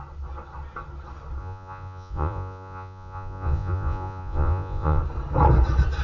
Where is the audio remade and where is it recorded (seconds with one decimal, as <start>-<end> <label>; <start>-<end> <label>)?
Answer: 0.0-1.4 recorded; 1.4-5.0 remade; 5.0-6.0 recorded